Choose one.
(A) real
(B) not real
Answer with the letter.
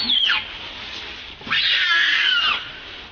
A